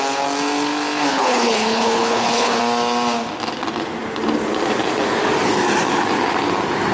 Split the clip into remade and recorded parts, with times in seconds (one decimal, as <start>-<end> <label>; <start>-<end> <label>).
0.0-1.1 recorded; 1.1-2.6 remade; 2.6-6.9 recorded